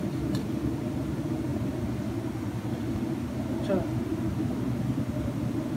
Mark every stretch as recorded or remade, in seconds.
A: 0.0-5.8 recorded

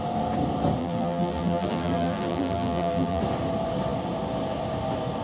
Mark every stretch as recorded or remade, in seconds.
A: 0.0-0.8 recorded; 0.8-3.2 remade; 3.2-5.2 recorded

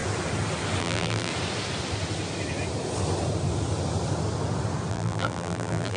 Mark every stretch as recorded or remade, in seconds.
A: 0.0-0.8 recorded; 0.8-1.3 remade; 1.3-4.9 recorded; 4.9-6.0 remade

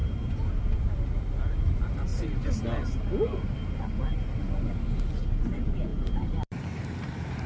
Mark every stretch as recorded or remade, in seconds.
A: 0.0-0.8 recorded; 0.8-2.1 remade; 2.1-5.4 recorded; 5.4-7.5 remade